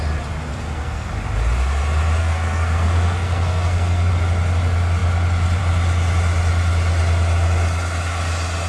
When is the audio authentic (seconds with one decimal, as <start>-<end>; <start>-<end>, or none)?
0.0-0.5; 1.1-2.2; 4.1-8.7